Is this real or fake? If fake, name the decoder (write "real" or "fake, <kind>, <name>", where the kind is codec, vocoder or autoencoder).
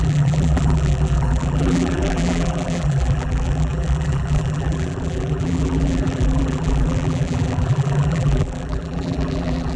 fake, vocoder, BigVGAN v2